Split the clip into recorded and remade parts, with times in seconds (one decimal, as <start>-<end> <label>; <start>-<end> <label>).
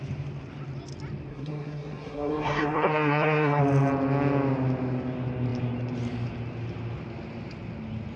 0.0-1.3 recorded; 1.3-3.6 remade; 3.6-8.2 recorded